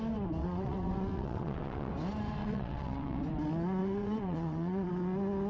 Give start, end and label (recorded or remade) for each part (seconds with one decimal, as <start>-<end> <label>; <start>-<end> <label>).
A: 0.0-0.4 recorded; 0.4-1.9 remade; 1.9-2.4 recorded; 2.4-3.2 remade; 3.2-3.8 recorded; 3.8-4.9 remade; 4.9-5.5 recorded